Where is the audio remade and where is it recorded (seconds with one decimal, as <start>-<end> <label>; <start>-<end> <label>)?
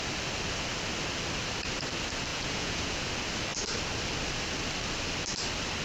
0.0-2.3 recorded; 2.3-3.1 remade; 3.1-5.8 recorded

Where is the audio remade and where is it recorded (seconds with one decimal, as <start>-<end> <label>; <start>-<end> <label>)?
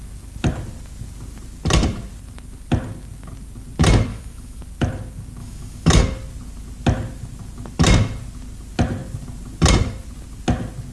0.0-4.1 recorded; 4.1-4.6 remade; 4.6-5.4 recorded; 5.4-6.0 remade; 6.0-10.9 recorded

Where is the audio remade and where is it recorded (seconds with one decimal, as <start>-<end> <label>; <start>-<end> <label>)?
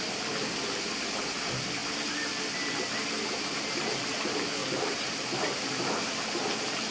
0.0-6.9 recorded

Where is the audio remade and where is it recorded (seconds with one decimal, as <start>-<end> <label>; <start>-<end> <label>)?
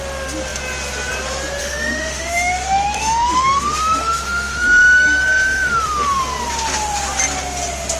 0.0-1.6 recorded; 1.6-6.2 remade; 6.2-8.0 recorded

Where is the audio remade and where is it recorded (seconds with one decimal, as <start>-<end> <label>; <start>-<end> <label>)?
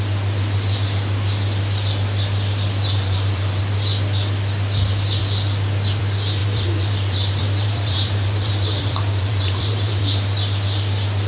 0.0-2.9 recorded; 2.9-3.6 remade; 3.6-6.4 recorded; 6.4-10.0 remade; 10.0-11.3 recorded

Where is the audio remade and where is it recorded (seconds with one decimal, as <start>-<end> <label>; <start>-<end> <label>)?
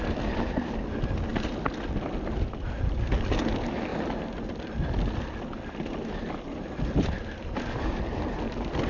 0.0-8.9 recorded